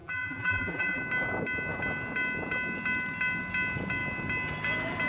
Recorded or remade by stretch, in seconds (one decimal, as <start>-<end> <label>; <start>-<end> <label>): 0.0-1.0 remade; 1.0-5.1 recorded